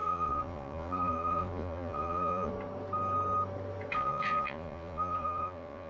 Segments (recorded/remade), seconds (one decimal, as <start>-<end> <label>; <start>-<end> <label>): 0.0-2.5 remade; 2.5-4.0 recorded; 4.0-5.9 remade